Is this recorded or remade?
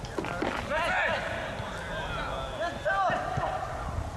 recorded